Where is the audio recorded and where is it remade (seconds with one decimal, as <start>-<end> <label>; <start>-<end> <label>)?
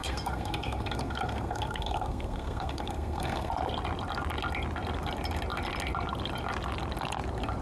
0.0-3.5 remade; 3.5-7.6 recorded